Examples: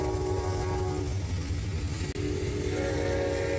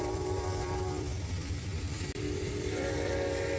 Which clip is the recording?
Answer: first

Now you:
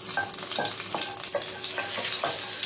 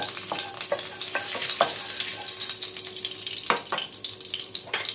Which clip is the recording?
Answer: first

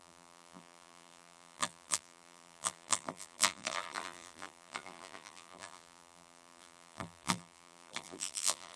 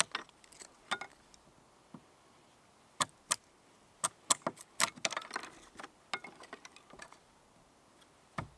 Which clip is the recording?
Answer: second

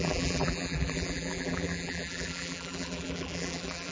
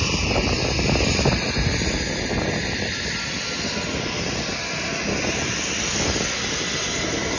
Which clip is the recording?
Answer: second